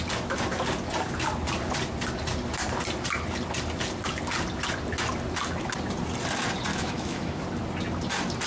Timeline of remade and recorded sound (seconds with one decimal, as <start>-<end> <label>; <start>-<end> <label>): 0.0-6.7 recorded; 6.7-7.4 remade; 7.4-8.5 recorded